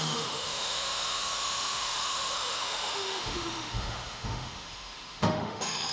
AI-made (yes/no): yes